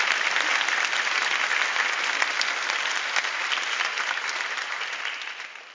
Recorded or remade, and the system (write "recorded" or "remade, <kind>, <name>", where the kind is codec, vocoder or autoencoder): recorded